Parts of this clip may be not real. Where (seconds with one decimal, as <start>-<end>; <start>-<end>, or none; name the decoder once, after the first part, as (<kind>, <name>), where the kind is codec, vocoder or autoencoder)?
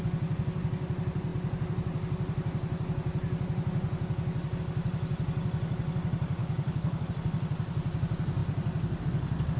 6.4-7.1 (codec, HILCodec)